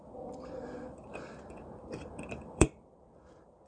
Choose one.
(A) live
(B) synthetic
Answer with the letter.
B